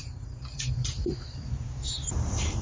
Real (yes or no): no